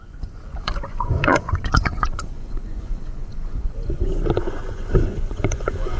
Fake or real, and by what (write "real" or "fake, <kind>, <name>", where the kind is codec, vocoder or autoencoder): fake, vocoder, Vocos